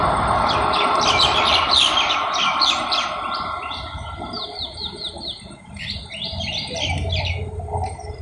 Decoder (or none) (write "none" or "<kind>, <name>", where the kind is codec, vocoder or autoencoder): none